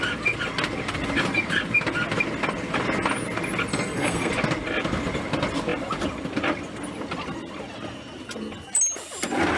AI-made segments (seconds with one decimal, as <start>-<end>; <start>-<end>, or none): 3.7-4.3